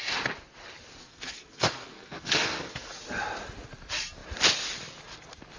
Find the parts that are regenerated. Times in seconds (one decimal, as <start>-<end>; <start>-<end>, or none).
1.0-3.0